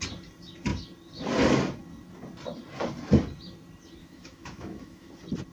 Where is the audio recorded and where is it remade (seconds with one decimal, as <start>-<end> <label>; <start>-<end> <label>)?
0.0-4.0 recorded; 4.0-5.1 remade; 5.1-5.5 recorded